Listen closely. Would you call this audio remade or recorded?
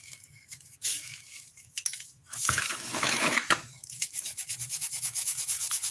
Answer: remade